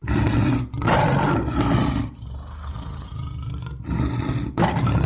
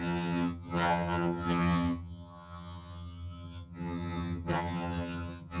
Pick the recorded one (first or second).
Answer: first